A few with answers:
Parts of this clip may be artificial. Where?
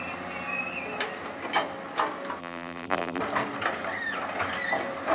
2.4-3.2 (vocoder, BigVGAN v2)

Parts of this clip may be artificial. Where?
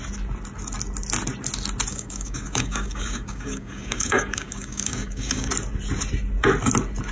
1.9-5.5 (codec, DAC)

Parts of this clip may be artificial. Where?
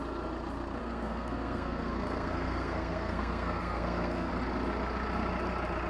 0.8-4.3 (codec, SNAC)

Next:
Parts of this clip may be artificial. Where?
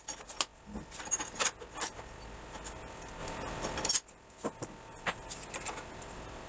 none